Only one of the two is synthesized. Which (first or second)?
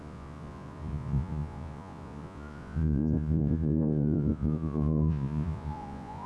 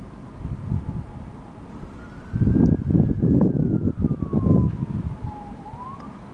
first